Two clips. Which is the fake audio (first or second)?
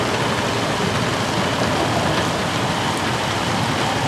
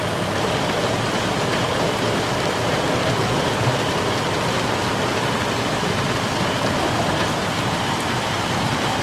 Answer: second